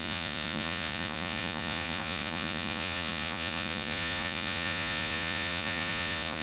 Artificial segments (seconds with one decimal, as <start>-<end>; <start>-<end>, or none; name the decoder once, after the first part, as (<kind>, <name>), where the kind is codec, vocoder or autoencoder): 0.0-6.4 (vocoder, Vocos)